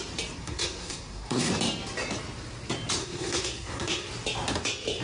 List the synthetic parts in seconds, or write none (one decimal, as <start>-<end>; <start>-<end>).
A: 0.4-1.5; 3.0-4.1